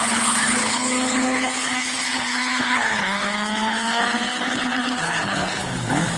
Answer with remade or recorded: remade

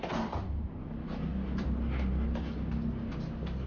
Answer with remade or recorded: recorded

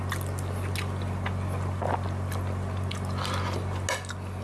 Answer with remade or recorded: recorded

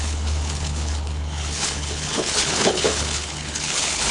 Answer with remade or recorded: remade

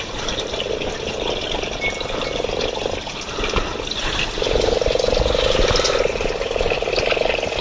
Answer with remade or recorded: recorded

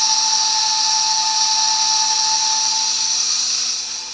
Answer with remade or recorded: recorded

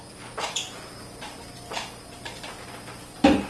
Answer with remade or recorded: recorded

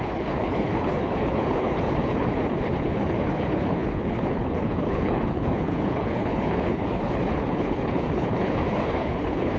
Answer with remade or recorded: remade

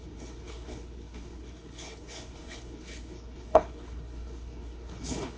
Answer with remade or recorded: remade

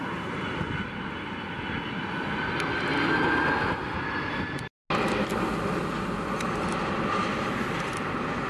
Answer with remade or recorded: recorded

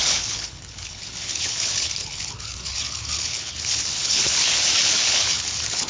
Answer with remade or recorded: remade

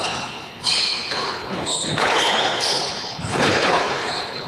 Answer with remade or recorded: remade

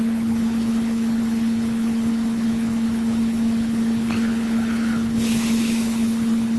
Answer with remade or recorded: remade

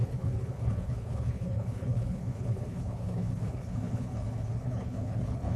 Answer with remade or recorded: remade